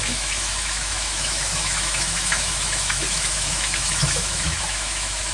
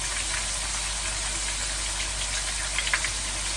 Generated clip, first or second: first